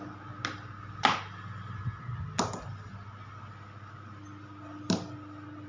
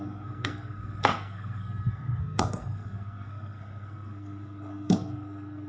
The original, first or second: first